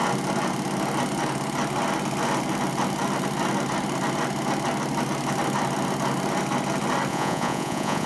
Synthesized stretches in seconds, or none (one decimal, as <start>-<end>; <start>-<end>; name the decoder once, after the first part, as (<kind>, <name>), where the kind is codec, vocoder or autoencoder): 7.1-8.1 (vocoder, Vocos)